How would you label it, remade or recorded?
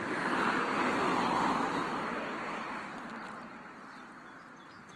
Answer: recorded